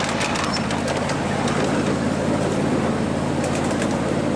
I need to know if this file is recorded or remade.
recorded